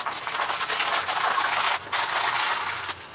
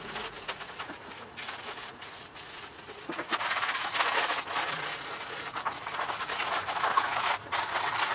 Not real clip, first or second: second